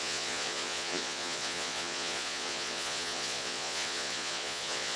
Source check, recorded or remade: remade